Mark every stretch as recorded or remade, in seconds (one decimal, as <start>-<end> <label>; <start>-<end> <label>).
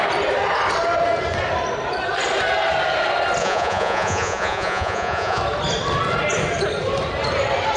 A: 0.0-3.4 recorded; 3.4-5.4 remade; 5.4-7.8 recorded